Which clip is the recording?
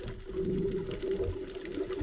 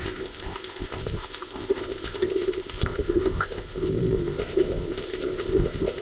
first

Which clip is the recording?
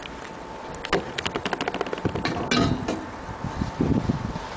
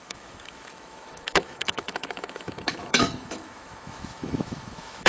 first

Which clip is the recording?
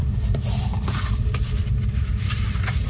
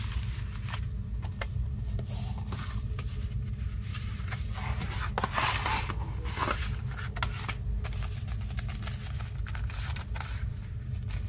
second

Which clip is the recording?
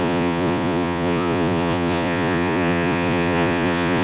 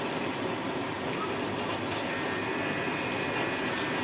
second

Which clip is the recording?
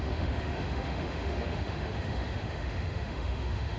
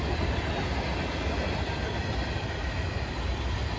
second